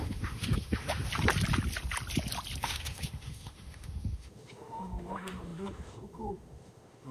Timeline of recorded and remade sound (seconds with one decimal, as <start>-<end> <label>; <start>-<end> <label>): 0.0-1.1 remade; 1.1-2.6 recorded; 2.6-7.1 remade